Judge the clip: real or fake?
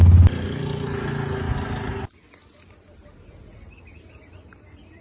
real